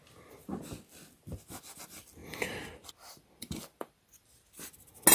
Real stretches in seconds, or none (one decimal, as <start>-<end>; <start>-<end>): 0.0-2.2; 4.5-5.1